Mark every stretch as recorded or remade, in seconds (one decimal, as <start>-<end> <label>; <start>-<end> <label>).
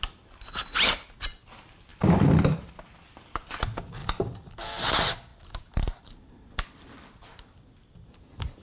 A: 0.0-1.9 recorded; 1.9-2.7 remade; 2.7-4.0 recorded; 4.0-4.5 remade; 4.5-8.6 recorded